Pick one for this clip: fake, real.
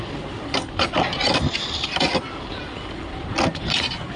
real